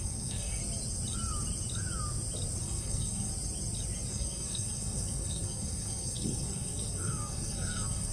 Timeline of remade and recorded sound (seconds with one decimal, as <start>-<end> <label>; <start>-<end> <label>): 0.0-0.6 remade; 0.6-2.6 recorded; 2.6-3.3 remade; 3.3-4.1 recorded; 4.1-8.1 remade